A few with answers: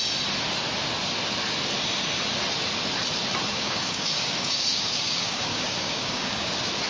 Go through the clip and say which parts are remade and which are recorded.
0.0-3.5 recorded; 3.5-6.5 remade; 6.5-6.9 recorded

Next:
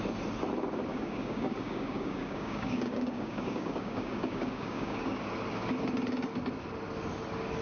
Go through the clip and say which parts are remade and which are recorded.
0.0-0.9 recorded; 0.9-5.2 remade; 5.2-7.6 recorded

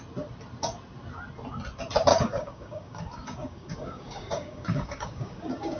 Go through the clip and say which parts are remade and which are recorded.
0.0-2.1 recorded; 2.1-5.8 remade